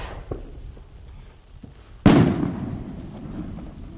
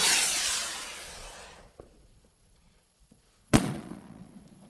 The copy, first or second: second